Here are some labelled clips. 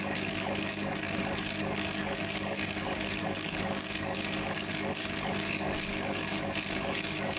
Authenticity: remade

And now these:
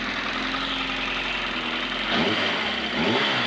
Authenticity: recorded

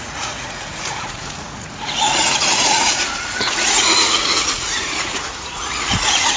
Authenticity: remade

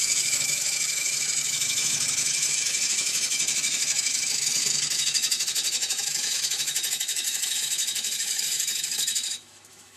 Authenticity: remade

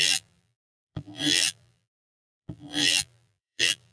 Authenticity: remade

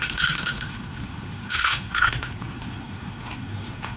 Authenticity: remade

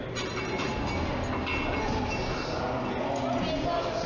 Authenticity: recorded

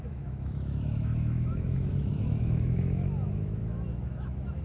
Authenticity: remade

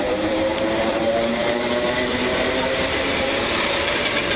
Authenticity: remade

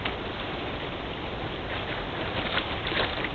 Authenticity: recorded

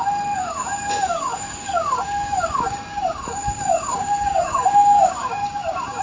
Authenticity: remade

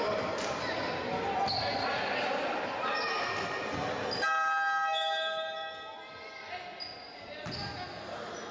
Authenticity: recorded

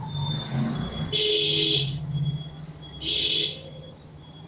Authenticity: recorded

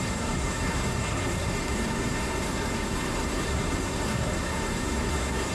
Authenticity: remade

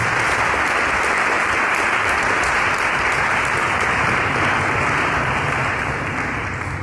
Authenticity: recorded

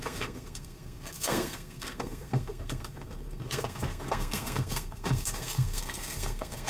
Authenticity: remade